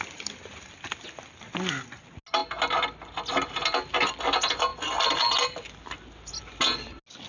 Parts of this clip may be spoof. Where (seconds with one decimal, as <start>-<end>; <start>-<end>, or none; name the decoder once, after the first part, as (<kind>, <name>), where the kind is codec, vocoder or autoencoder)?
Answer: none